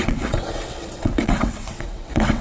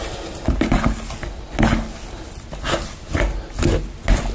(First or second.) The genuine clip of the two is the second